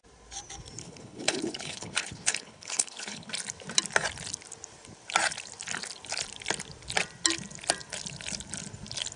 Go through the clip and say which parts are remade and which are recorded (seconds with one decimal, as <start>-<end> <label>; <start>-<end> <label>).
0.0-0.8 recorded; 0.8-3.3 remade; 3.3-9.2 recorded